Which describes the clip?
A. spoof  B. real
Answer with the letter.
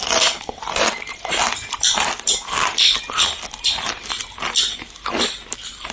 B